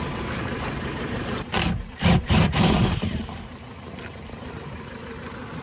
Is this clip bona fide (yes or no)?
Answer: no